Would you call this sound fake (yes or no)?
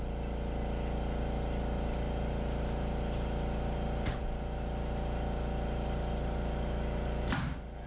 no